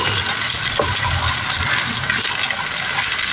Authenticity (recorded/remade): recorded